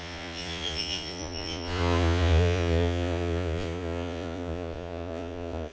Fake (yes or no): yes